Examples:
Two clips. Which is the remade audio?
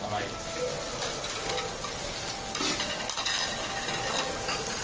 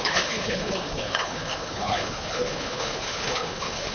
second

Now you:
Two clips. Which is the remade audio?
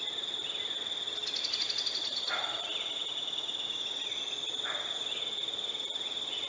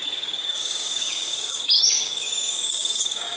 second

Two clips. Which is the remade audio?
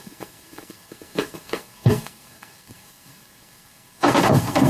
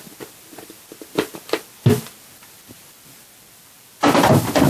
first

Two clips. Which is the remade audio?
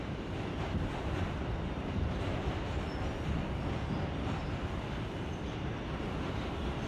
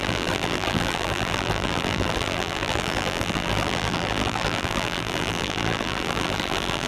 second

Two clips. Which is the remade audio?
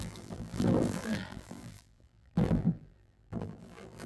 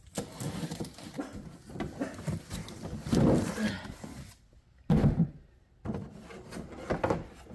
first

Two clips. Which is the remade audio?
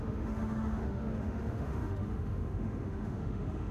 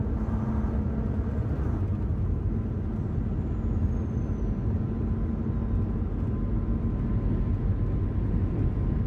first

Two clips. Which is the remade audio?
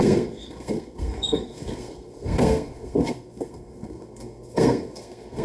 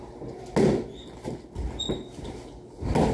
first